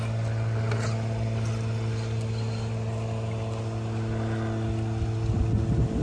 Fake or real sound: real